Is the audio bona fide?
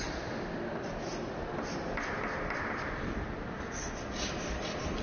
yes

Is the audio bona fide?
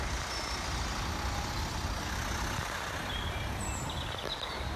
yes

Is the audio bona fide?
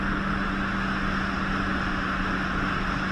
yes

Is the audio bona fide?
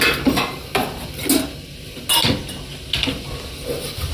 yes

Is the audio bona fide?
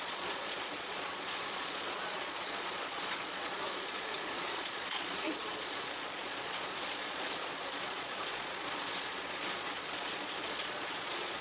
no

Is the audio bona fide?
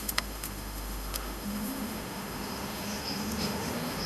no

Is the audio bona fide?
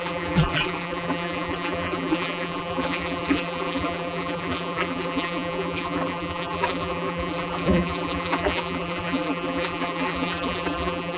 no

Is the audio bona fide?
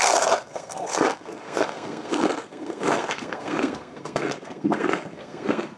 no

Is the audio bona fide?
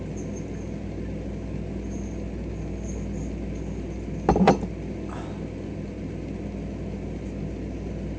yes